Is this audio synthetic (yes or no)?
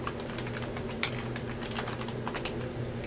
no